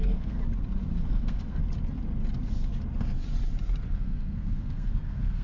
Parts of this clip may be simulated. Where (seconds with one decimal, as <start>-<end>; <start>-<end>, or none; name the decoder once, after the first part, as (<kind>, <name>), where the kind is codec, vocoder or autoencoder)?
0.0-0.4 (codec, SNAC); 1.1-1.6; 3.9-5.4